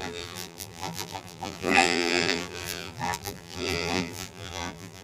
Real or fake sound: fake